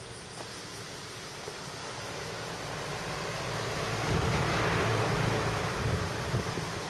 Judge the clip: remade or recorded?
recorded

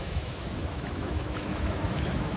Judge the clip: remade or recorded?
remade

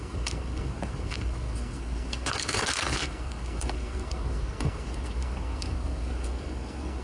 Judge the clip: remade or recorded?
remade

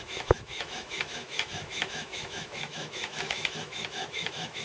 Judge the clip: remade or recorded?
remade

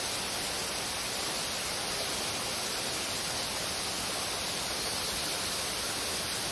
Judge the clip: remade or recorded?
recorded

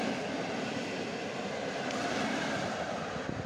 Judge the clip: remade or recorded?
recorded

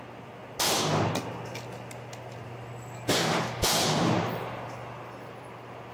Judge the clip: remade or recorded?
recorded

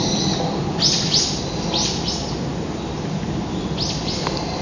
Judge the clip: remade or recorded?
recorded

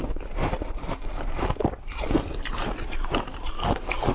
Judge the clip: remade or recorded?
recorded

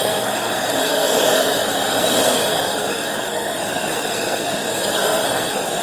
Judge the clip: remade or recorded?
remade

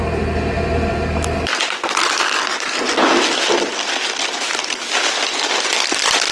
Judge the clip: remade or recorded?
recorded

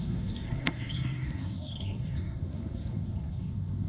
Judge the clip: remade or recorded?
remade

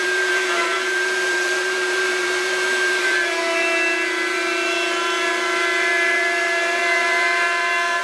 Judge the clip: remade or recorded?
remade